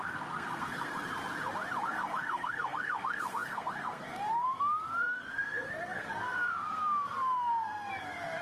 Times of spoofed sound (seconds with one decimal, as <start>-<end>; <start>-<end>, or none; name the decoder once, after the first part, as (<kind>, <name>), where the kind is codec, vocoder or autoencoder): 0.0-0.9 (codec, SNAC); 1.8-8.4